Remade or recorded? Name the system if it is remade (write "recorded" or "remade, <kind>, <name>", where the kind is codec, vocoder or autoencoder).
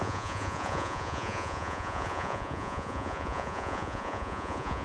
remade, vocoder, Vocos